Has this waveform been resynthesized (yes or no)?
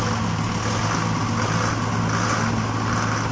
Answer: no